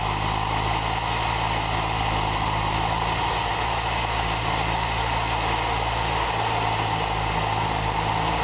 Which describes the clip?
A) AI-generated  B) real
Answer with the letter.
B